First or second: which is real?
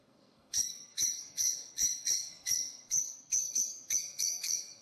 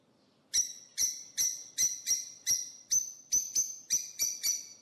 second